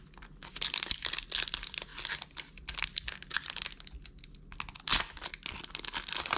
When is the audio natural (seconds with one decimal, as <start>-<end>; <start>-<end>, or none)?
0.0-6.4